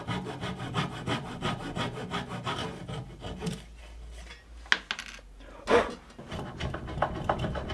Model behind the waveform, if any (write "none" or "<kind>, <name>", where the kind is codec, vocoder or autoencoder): none